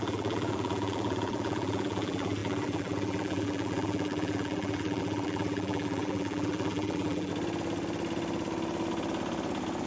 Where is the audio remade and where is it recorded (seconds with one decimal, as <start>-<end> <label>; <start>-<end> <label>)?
0.0-7.3 remade; 7.3-9.9 recorded